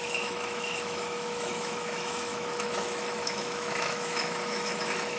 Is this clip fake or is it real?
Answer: fake